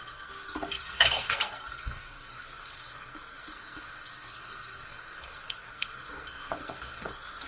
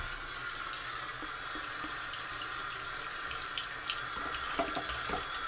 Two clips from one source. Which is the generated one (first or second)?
first